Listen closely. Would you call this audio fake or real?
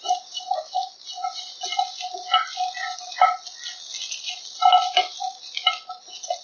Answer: real